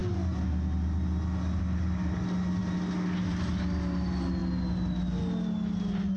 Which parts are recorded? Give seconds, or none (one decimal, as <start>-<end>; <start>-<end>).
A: 0.0-6.2